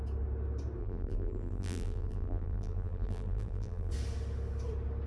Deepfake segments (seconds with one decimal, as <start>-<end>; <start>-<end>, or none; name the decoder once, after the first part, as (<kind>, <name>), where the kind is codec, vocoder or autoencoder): 0.8-3.9 (vocoder, BigVGAN v2)